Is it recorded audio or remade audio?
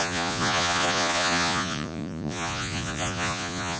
remade